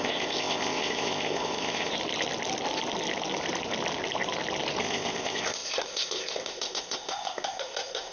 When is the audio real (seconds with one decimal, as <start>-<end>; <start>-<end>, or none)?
1.9-4.8